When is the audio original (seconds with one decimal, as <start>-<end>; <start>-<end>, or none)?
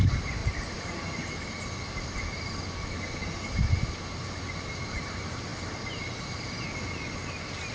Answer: 0.0-7.7